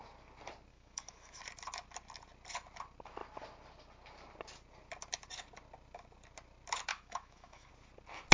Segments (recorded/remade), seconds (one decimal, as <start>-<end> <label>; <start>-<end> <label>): 0.0-0.7 recorded; 0.7-1.4 remade; 1.4-6.9 recorded; 6.9-7.7 remade; 7.7-8.3 recorded